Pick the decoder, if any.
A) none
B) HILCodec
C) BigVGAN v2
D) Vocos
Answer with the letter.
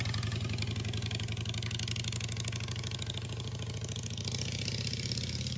A